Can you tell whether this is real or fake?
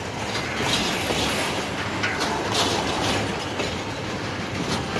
real